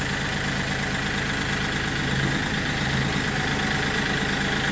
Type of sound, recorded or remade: recorded